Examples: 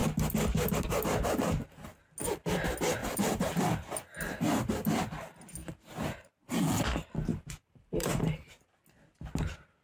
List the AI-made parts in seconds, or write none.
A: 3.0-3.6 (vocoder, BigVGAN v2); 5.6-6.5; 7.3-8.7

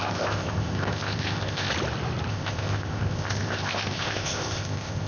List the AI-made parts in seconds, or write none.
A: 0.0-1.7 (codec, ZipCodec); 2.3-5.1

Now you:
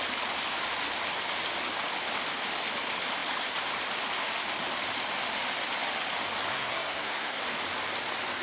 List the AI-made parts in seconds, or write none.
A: 6.5-7.4 (codec, SNAC)

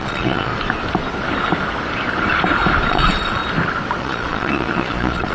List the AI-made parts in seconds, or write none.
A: 0.0-0.5 (vocoder, Vocos); 2.9-3.4; 4.0-5.3

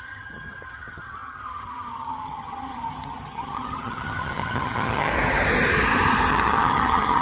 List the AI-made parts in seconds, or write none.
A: 0.0-5.1 (vocoder, HiFi-GAN); 6.3-7.2

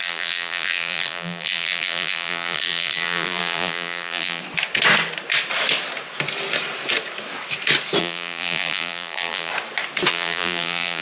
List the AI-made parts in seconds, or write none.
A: 0.0-4.4 (vocoder, BigVGAN v2); 8.0-9.5; 10.1-11.0

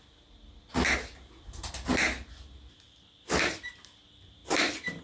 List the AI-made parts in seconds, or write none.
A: none

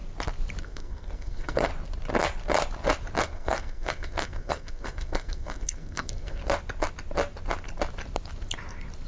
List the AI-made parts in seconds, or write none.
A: 0.6-1.7 (codec, SNAC); 3.2-6.4